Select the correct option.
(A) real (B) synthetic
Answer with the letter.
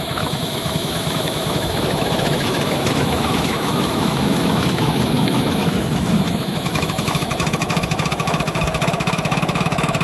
B